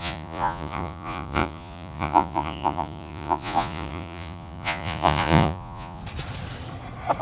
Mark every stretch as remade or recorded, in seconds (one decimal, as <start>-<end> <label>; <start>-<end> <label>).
0.0-6.0 remade; 6.0-7.2 recorded